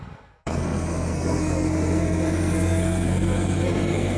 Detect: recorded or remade remade